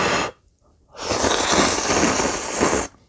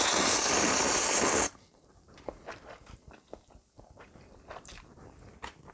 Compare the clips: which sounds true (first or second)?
first